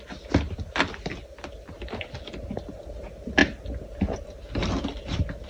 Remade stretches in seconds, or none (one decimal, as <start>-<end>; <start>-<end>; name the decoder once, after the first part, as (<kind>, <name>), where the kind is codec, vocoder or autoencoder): none